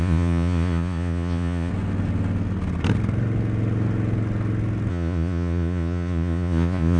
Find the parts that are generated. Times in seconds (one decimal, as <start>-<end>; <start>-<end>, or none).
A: 0.0-1.7; 4.9-7.0